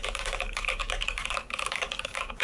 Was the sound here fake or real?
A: fake